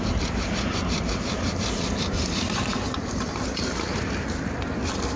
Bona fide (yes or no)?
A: no